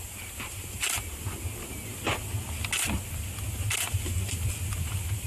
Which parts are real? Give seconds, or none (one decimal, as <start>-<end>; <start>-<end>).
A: 0.0-5.3